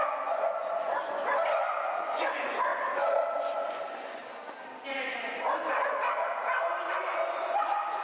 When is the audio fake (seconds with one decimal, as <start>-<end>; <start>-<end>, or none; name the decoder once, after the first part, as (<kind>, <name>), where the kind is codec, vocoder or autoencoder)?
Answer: 0.0-2.7 (vocoder, Vocos); 3.4-4.2; 6.7-8.0